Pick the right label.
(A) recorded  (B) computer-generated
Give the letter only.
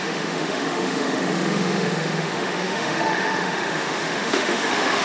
B